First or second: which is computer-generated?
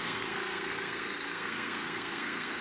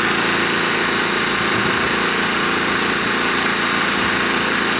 first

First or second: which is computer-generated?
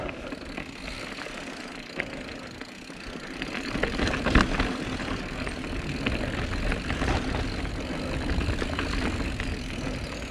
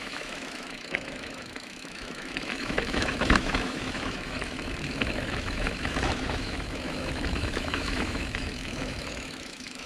second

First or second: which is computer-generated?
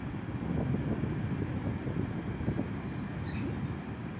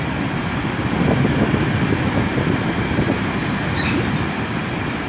second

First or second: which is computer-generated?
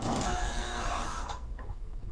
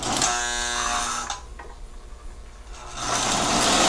first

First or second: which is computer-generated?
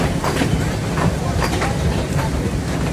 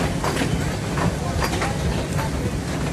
first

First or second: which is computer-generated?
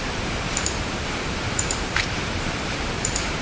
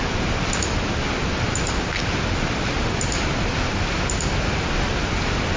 first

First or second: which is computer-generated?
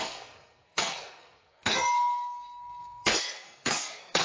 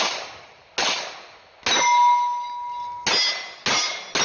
first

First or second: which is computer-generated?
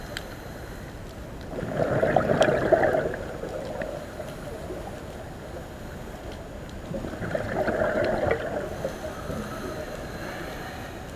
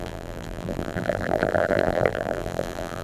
second